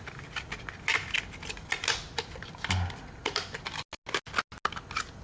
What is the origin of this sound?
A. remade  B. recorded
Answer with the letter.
B